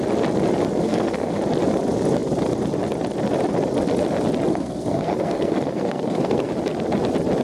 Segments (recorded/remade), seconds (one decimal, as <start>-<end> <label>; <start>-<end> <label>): 0.0-0.8 recorded; 0.8-1.4 remade; 1.4-4.5 recorded; 4.5-6.5 remade; 6.5-7.4 recorded